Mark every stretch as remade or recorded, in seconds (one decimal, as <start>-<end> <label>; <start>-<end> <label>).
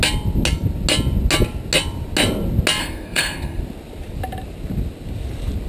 0.0-2.8 recorded; 2.8-3.6 remade; 3.6-5.7 recorded